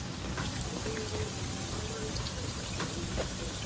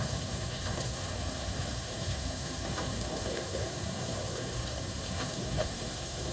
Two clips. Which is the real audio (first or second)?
first